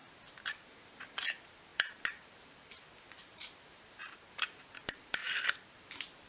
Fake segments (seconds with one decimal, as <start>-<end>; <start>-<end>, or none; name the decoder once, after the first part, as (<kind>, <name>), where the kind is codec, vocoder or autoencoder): 0.6-5.2 (vocoder, BigVGAN v2)